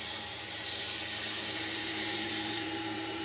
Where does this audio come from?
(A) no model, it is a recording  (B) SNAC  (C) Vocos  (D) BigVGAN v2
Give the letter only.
D